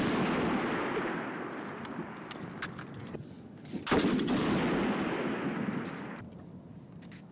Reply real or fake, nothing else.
real